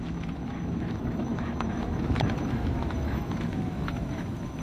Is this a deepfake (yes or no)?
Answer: yes